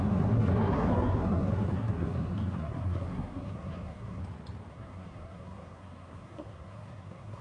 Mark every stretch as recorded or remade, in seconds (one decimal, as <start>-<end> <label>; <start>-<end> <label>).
0.0-4.2 remade; 4.2-4.7 recorded; 4.7-7.4 remade